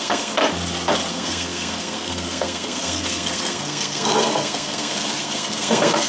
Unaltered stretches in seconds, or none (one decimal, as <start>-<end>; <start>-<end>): 0.4-1.1